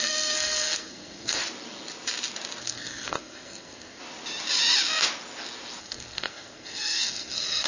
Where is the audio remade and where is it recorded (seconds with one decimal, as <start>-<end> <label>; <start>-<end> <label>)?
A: 0.0-1.4 remade; 1.4-2.6 recorded; 2.6-4.0 remade; 4.0-5.8 recorded; 5.8-7.7 remade